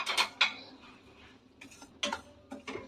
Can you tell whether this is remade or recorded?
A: recorded